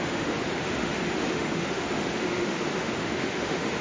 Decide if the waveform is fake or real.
fake